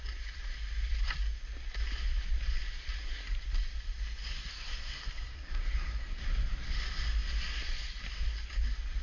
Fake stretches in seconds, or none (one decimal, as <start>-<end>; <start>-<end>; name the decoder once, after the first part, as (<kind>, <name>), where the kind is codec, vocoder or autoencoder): 4.5-6.2 (codec, SNAC)